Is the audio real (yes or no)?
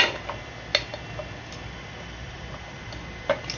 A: yes